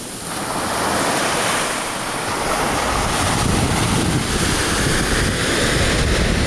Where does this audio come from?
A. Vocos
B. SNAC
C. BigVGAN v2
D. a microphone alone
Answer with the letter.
D